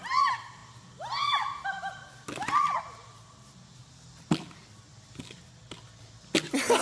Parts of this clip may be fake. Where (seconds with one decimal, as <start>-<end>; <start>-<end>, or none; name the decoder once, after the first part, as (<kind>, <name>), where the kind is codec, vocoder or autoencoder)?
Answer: none